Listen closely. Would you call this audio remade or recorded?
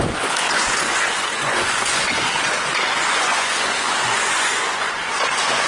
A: remade